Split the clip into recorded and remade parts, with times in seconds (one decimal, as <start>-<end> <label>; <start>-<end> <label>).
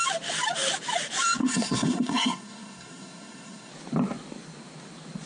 0.0-1.4 recorded; 1.4-3.7 remade; 3.7-5.3 recorded